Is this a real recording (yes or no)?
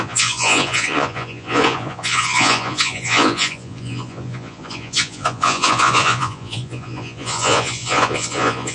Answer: no